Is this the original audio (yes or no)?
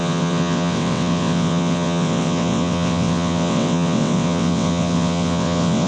no